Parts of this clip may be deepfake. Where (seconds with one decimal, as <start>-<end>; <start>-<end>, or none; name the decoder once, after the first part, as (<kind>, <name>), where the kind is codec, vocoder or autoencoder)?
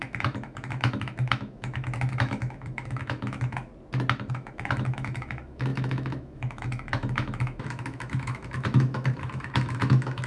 0.0-3.7 (autoencoder, DAC-VAE); 4.3-10.3